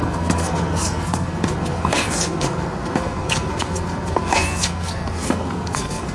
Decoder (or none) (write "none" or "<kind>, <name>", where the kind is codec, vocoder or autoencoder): codec, SNAC